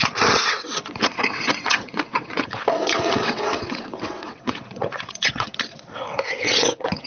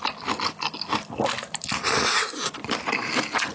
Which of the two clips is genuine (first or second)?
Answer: second